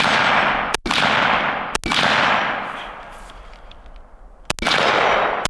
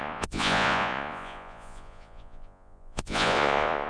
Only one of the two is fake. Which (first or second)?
second